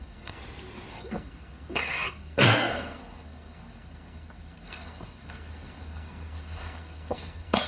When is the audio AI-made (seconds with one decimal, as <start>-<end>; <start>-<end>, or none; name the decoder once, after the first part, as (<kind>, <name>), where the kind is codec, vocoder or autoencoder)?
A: 0.0-0.4 (codec, SNAC); 0.9-7.7